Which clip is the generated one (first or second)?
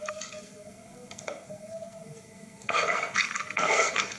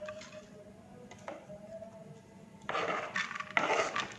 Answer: first